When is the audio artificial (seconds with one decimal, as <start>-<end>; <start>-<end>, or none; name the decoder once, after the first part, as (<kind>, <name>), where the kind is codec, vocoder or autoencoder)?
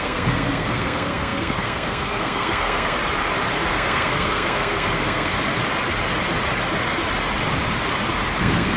0.0-3.0 (codec, SNAC); 3.7-5.3; 8.4-8.8